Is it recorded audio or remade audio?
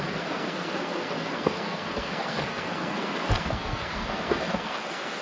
remade